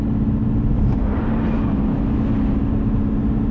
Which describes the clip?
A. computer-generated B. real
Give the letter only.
B